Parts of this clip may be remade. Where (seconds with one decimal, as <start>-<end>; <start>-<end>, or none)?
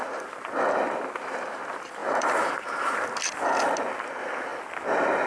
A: 2.0-2.5